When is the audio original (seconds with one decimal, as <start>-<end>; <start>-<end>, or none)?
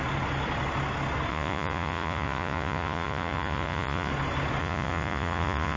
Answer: 0.0-1.3; 4.1-4.6